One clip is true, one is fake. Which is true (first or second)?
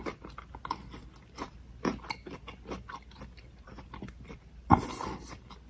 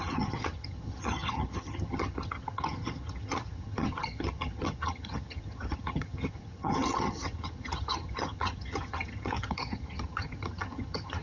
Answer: first